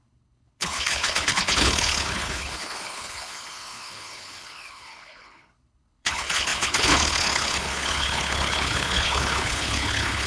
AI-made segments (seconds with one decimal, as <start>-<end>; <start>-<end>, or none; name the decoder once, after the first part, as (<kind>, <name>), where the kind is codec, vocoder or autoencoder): 0.0-10.3 (codec, HILCodec)